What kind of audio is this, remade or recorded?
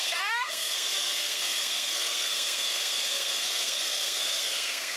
remade